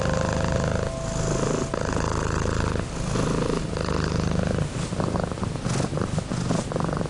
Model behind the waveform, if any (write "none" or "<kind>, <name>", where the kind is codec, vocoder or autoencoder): none